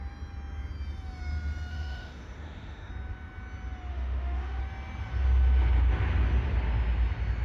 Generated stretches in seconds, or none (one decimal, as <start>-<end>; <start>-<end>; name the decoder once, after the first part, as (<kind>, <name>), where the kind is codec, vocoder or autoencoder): 1.7-2.9 (autoencoder, DAC-VAE); 3.9-4.6